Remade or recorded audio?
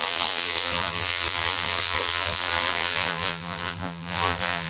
remade